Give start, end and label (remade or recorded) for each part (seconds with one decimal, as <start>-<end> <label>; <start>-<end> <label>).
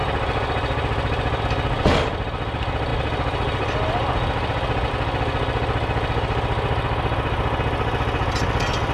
0.0-8.9 recorded